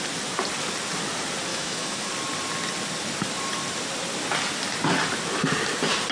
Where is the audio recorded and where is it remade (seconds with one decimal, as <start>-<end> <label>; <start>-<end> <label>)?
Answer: 0.0-1.5 recorded; 1.5-2.1 remade; 2.1-6.1 recorded

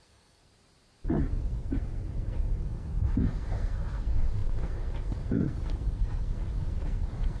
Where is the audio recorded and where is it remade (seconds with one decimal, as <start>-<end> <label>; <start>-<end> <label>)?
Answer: 0.0-0.5 remade; 0.5-1.3 recorded; 1.3-7.4 remade